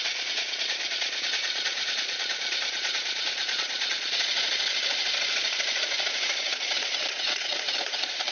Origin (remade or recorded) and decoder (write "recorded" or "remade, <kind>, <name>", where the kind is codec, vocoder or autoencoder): remade, vocoder, Vocos